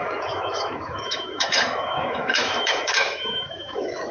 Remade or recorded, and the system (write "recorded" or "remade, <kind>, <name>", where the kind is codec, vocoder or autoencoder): remade, autoencoder, DAC-VAE